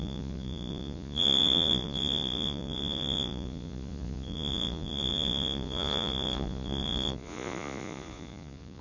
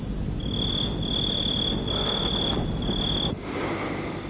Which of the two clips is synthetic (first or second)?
first